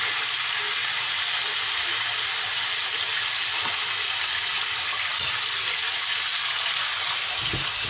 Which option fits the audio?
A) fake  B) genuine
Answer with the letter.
B